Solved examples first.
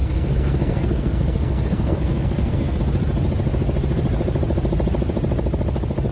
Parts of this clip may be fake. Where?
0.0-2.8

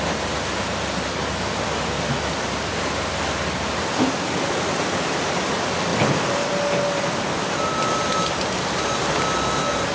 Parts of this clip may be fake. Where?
none

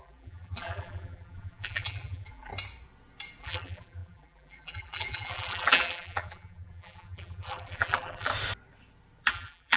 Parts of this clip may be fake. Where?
0.0-2.5; 3.4-8.3; 9.3-9.8

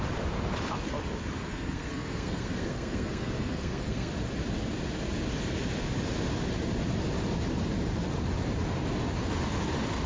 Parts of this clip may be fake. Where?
1.4-4.1

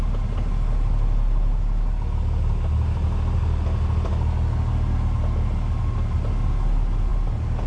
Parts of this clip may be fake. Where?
none

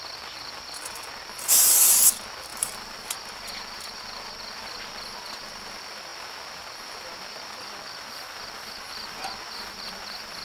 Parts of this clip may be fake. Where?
2.5-3.1